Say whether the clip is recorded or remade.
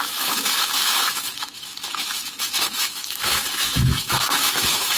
remade